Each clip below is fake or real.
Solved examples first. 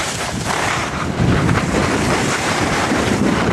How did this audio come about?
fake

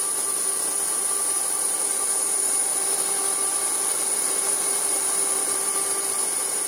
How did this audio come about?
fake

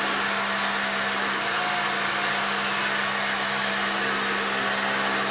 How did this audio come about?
real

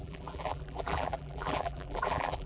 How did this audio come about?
fake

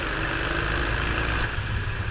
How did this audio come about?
real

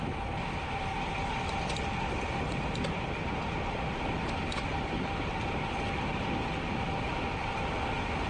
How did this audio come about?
real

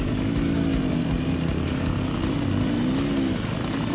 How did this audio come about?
real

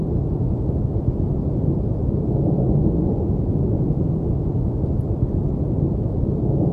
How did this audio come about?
real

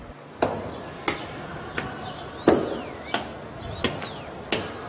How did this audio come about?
real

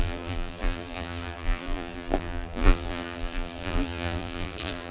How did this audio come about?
fake